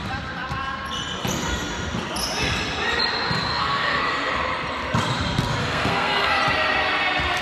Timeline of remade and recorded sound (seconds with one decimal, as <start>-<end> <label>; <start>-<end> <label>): 0.0-3.5 recorded; 3.5-4.3 remade; 4.3-5.6 recorded; 5.6-6.4 remade; 6.4-7.4 recorded